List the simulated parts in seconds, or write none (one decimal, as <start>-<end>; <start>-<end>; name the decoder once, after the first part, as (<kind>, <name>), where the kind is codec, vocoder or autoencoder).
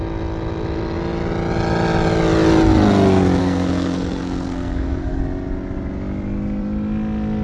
3.4-5.2 (codec, SNAC)